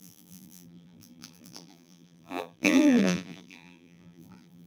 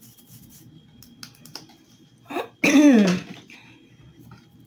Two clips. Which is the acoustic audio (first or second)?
second